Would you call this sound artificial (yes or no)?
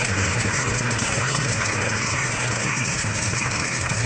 yes